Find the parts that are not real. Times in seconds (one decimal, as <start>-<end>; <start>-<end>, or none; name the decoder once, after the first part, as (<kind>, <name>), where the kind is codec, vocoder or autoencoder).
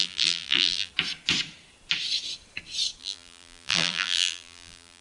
0.0-0.9 (vocoder, BigVGAN v2); 3.0-5.0